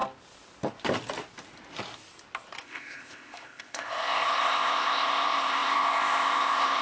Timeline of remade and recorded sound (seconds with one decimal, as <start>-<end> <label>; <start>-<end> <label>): 0.0-2.6 recorded; 2.6-6.8 remade